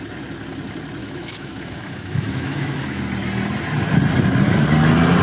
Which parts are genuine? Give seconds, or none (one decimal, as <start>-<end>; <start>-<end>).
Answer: 0.0-1.0; 3.0-5.2